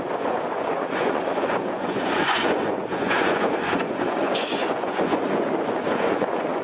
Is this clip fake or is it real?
fake